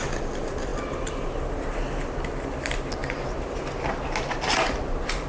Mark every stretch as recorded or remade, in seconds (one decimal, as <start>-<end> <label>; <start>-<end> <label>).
0.0-5.3 recorded